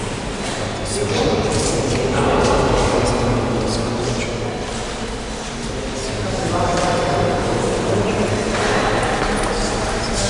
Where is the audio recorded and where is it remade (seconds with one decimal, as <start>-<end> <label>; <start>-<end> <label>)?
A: 0.0-10.3 recorded

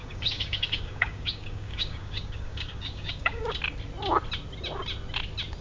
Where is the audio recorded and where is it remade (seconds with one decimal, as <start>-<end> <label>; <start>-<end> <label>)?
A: 0.0-3.4 remade; 3.4-5.6 recorded